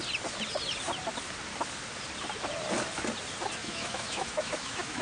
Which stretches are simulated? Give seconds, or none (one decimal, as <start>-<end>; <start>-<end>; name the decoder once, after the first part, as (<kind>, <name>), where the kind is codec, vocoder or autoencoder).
3.6-5.0 (autoencoder, DAC-VAE)